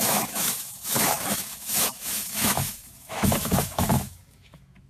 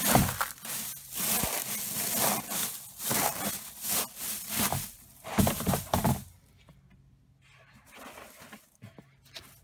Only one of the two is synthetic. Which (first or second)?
first